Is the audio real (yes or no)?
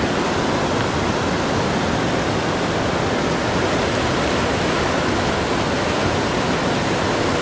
yes